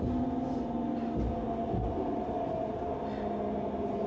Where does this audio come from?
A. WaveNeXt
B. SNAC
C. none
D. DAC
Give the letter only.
C